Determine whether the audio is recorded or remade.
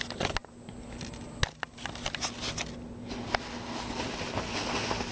recorded